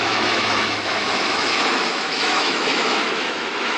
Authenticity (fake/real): fake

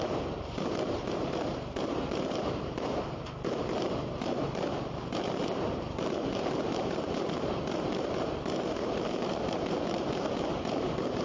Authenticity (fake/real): fake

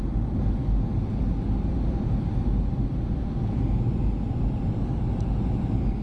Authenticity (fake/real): real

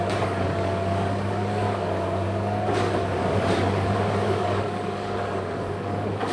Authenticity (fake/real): fake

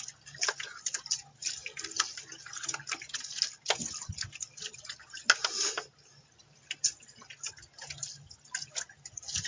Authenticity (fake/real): real